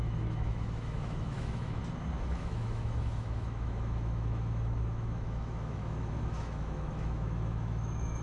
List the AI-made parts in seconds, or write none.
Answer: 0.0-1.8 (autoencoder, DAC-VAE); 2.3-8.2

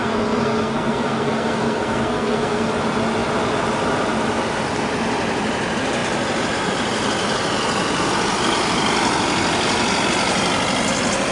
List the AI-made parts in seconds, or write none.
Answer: 0.0-2.7 (codec, SNAC)

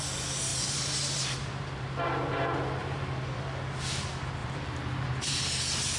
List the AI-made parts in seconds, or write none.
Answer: 0.5-2.0 (vocoder, BigVGAN v2); 2.8-3.6; 4.4-5.6

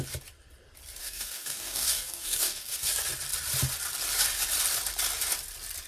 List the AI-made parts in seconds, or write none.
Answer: 1.0-2.9 (codec, DAC)

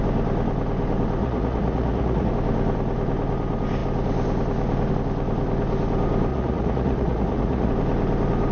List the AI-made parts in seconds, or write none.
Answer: 1.2-2.3 (vocoder, Vocos); 6.3-7.7

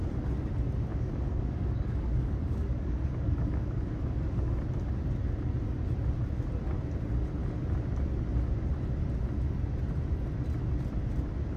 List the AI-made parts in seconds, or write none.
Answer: 0.9-4.5 (codec, DAC)